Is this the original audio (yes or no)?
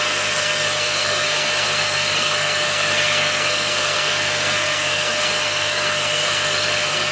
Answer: no